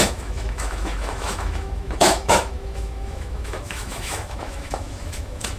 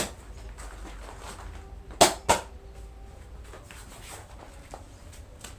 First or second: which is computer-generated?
first